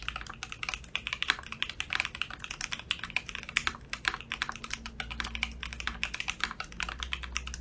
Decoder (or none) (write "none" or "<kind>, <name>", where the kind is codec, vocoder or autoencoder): none